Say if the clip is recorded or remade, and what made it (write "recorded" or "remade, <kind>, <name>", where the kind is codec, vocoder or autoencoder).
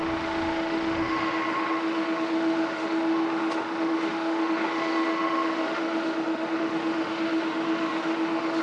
remade, autoencoder, DAC-VAE